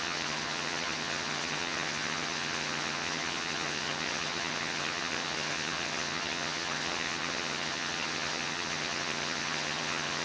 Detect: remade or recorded remade